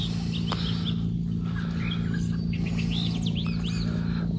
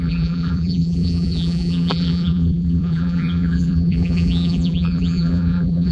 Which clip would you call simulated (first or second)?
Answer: second